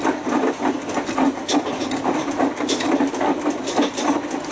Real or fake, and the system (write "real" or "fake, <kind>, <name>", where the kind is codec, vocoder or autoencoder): real